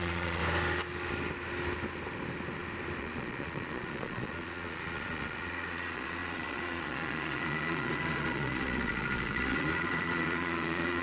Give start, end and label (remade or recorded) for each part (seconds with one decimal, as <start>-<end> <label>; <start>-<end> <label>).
0.0-0.4 remade; 0.4-3.0 recorded; 3.0-11.0 remade